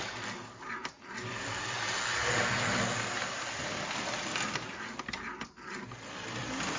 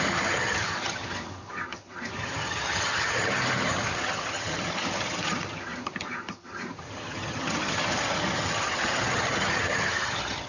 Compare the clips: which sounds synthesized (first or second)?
second